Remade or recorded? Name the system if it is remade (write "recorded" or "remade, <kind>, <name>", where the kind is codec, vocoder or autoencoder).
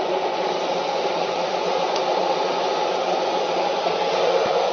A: remade, vocoder, Vocos